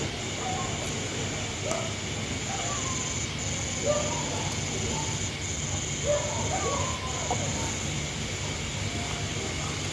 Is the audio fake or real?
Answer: real